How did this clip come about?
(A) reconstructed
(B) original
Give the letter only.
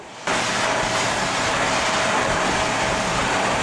B